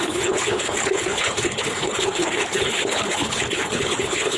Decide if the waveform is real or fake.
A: fake